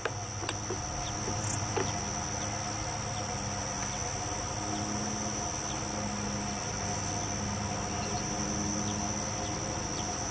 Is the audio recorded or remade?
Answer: recorded